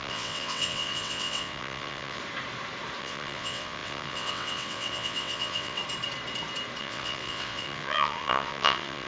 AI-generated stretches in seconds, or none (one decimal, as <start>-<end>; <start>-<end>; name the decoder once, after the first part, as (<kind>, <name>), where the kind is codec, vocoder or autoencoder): 0.0-2.2 (vocoder, WaveNeXt); 3.0-5.8; 6.8-9.1